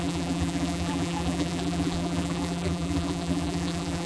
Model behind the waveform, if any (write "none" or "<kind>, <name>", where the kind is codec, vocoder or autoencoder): vocoder, BigVGAN v2